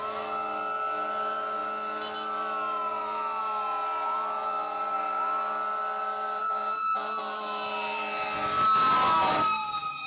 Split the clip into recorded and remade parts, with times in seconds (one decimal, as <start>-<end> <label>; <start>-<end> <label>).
0.0-10.1 recorded